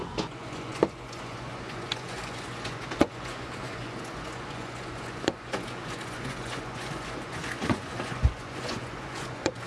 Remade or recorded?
remade